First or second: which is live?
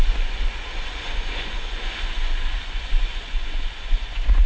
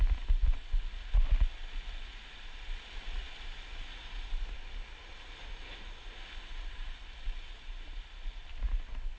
second